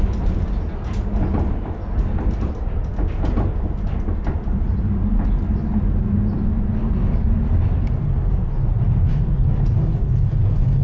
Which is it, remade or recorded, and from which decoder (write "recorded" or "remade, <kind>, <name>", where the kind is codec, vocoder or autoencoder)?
recorded